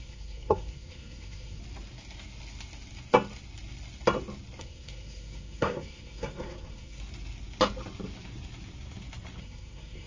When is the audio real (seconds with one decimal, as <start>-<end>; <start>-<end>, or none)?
1.6-4.6; 7.0-9.4

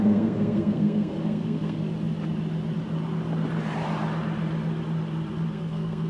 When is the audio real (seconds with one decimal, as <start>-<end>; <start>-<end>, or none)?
1.8-5.5

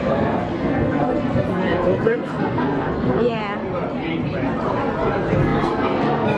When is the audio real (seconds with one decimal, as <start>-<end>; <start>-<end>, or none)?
3.4-5.0